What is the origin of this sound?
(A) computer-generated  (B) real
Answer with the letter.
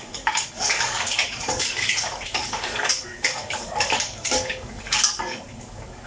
A